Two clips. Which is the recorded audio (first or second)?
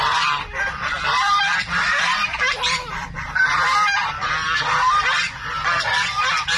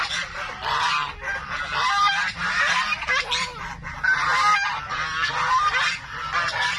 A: second